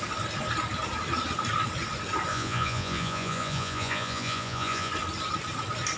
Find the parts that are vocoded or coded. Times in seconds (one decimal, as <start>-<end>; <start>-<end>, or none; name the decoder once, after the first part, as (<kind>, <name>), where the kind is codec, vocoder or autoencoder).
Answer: 2.3-4.9 (vocoder, Vocos)